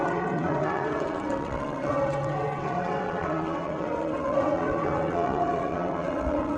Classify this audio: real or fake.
fake